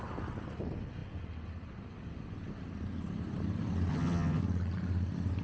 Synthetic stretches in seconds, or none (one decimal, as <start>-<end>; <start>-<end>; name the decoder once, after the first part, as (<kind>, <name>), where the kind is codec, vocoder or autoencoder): 3.9-4.4 (vocoder, HiFi-GAN)